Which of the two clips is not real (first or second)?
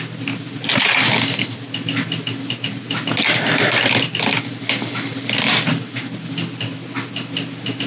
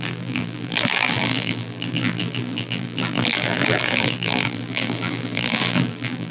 second